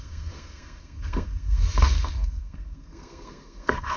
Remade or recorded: remade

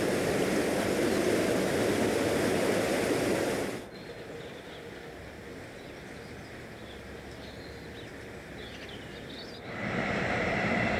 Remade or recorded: recorded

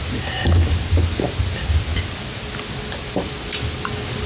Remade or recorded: recorded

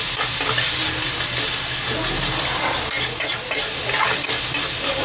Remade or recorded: recorded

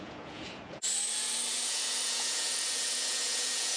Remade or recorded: remade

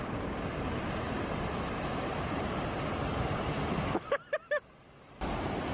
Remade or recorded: remade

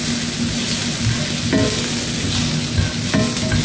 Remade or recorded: recorded